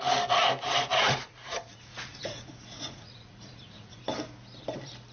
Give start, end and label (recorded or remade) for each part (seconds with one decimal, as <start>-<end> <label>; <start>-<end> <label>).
0.0-0.9 recorded; 0.9-4.0 remade; 4.0-5.1 recorded